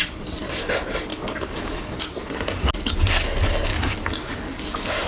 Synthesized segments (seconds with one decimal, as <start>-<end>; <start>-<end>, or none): 1.1-1.9; 3.7-5.1